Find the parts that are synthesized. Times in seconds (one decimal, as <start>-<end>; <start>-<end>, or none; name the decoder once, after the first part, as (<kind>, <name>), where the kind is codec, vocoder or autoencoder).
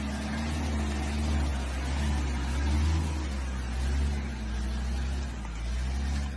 none